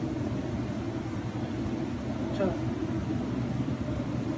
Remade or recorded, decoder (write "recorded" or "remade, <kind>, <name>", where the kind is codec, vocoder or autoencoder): recorded